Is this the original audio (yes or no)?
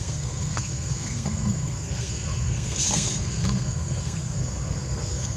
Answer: no